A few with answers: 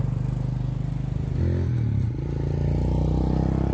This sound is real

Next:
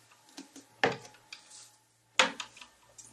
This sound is real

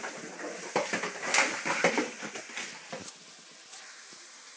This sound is real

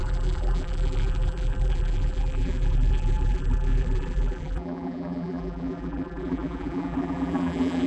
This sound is fake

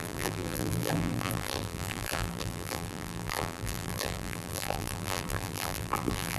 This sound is fake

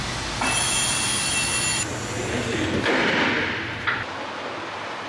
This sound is real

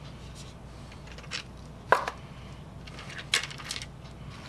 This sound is real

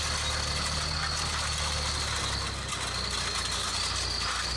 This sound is real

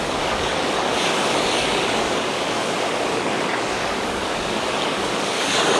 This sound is fake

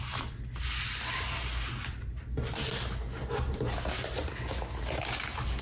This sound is real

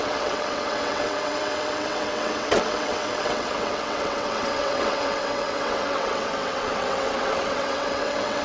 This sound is fake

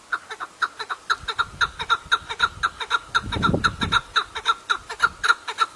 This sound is real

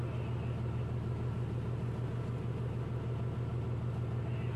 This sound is real